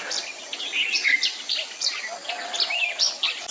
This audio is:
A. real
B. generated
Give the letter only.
A